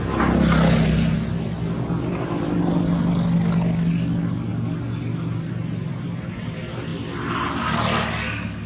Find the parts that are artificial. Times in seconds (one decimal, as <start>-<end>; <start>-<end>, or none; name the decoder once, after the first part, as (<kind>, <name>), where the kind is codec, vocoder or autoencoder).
none